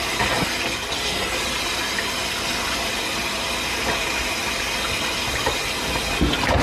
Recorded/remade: recorded